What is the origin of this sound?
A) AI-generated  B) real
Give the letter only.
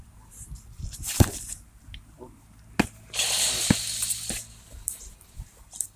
B